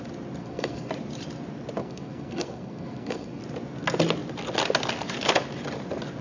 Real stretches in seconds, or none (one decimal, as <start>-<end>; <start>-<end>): 0.0-0.4; 0.9-1.8; 3.4-6.2

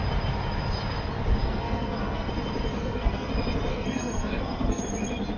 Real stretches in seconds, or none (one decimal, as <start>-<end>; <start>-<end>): 0.0-1.4; 2.3-2.8; 3.3-3.7; 4.8-5.4

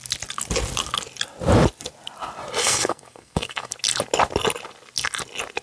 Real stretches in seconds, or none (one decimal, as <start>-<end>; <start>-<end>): 0.0-2.6; 3.7-5.6

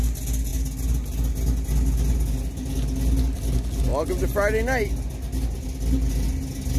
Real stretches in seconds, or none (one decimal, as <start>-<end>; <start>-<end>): 0.0-6.8

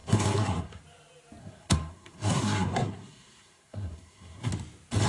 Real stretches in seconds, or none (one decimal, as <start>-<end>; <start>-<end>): 0.8-1.4; 4.5-5.1

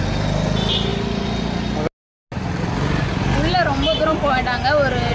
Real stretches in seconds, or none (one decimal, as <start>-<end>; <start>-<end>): 0.0-5.1

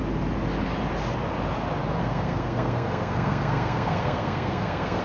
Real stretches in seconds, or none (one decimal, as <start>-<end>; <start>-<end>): 0.0-2.0

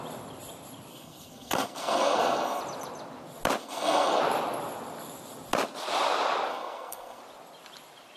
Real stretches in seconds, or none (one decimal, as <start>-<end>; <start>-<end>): 0.0-0.9; 2.6-3.6; 4.2-6.5; 7.2-8.2